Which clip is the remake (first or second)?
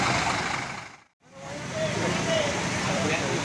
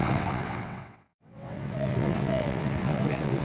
second